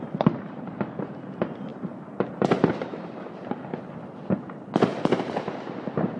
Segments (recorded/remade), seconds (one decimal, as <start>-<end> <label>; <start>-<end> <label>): 0.0-3.7 remade; 3.7-5.3 recorded; 5.3-6.2 remade